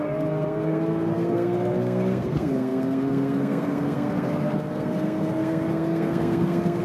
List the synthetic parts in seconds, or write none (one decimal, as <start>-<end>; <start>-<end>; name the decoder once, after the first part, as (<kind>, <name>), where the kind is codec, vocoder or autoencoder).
0.0-6.8 (codec, SNAC)